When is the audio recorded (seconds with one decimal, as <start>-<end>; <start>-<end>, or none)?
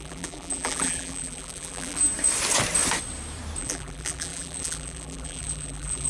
2.0-3.6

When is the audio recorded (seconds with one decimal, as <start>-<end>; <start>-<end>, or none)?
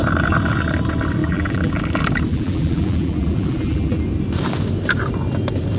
0.0-1.2; 1.8-2.3; 4.0-5.8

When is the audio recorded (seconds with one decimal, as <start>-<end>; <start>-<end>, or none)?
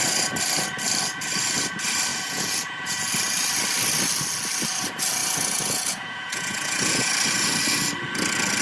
0.0-2.1; 3.1-5.2; 7.1-8.6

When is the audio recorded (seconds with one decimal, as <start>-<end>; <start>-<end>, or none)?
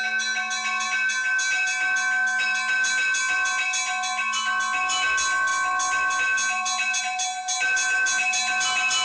0.0-9.0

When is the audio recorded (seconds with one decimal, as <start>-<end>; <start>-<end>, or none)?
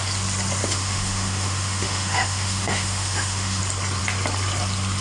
0.0-0.6; 3.6-5.0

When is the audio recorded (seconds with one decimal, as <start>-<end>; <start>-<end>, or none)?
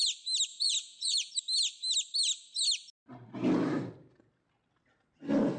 0.0-0.5; 1.3-5.6